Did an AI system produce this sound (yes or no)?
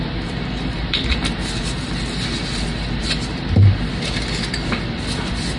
no